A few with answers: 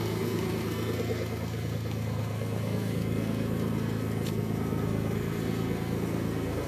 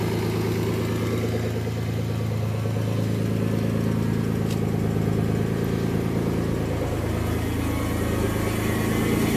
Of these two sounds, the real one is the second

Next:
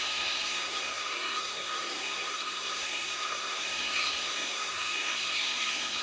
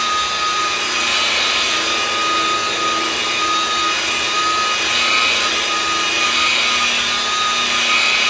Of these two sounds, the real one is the second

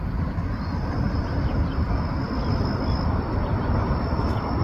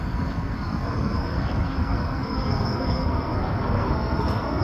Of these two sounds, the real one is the first